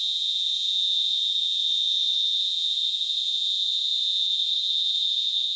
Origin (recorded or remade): remade